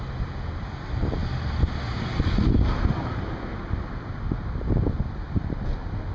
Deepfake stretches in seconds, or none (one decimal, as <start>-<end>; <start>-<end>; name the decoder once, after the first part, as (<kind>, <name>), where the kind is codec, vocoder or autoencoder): none